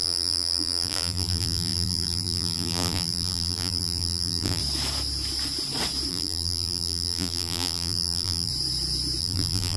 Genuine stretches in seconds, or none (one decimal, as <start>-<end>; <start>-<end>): 4.6-6.1; 8.5-9.2